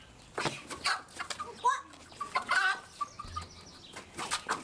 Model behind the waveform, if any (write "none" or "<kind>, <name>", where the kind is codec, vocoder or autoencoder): none